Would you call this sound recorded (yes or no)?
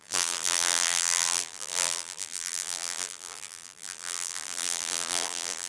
no